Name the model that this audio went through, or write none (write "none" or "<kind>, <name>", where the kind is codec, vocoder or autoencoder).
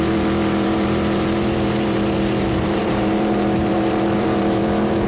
vocoder, BigVGAN v2